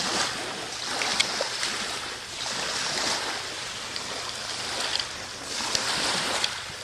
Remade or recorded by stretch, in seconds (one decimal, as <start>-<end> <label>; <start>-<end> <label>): 0.0-6.8 recorded